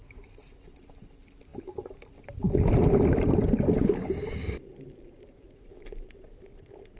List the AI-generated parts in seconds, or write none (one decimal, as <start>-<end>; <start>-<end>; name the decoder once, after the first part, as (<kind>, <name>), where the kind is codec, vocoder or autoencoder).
none